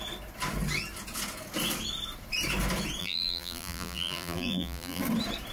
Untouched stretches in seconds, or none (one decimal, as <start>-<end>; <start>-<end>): 0.0-3.0; 5.0-5.5